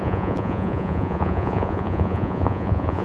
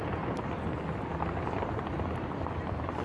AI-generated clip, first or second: first